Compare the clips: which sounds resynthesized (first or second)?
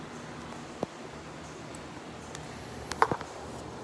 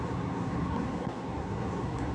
second